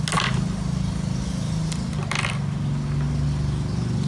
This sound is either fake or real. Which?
real